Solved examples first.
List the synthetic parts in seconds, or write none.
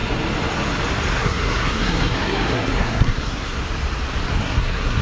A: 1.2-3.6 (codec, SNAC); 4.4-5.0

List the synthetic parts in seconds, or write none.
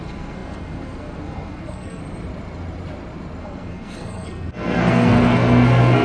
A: 0.0-2.0 (codec, SNAC); 3.4-6.0